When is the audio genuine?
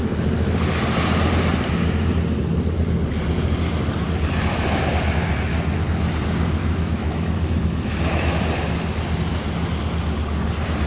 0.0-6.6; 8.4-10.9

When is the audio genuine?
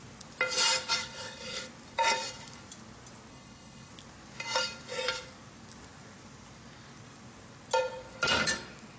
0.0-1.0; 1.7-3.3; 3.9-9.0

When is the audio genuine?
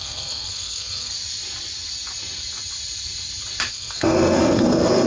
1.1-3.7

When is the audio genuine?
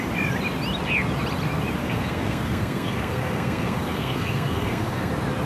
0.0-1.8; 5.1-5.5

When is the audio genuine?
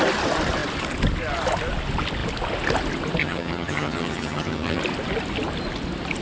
0.0-3.2; 4.8-6.2